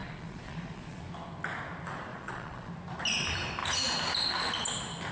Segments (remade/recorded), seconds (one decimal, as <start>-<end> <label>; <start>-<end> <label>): 0.0-1.0 remade; 1.0-2.1 recorded; 2.1-2.7 remade; 2.7-5.1 recorded